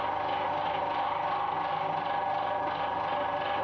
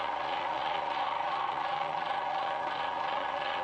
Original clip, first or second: first